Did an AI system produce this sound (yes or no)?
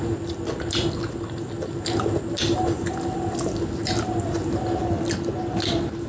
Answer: no